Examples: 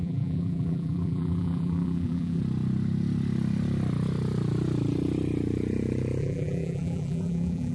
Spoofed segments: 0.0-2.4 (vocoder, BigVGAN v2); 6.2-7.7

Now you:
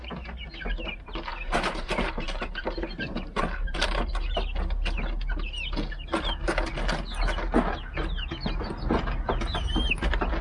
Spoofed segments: 1.3-4.1 (vocoder, BigVGAN v2)

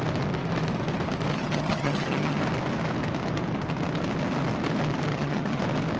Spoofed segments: 1.3-2.4 (vocoder, HiFi-GAN); 5.1-5.6

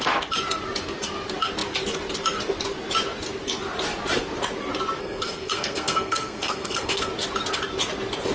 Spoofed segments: 5.0-7.1 (codec, SNAC)

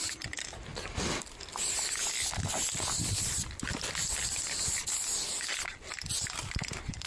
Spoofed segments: none

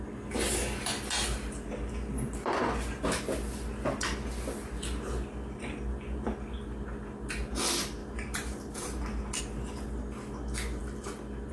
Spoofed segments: 8.0-9.4 (vocoder, BigVGAN v2)

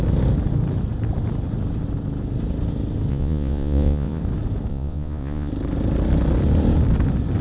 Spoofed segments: 3.1-4.2 (vocoder, Vocos); 4.7-5.5

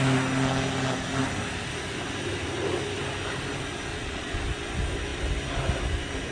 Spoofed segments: 3.9-4.4 (vocoder, Vocos)